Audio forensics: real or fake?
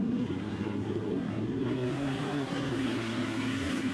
fake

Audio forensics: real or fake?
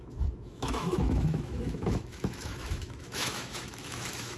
fake